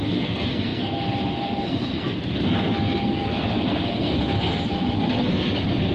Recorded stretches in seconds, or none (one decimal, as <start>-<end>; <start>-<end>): none